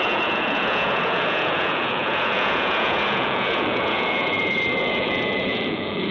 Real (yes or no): no